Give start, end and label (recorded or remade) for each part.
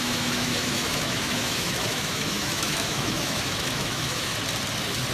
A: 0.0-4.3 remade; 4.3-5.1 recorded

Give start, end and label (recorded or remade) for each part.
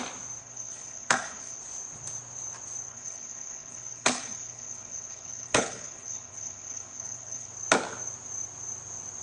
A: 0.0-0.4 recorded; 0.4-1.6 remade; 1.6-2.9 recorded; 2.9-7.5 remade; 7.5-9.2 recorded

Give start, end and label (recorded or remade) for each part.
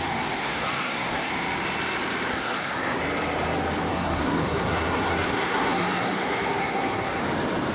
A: 0.0-0.4 recorded; 0.4-1.3 remade; 1.3-2.3 recorded; 2.3-3.0 remade; 3.0-3.9 recorded; 3.9-7.2 remade; 7.2-7.7 recorded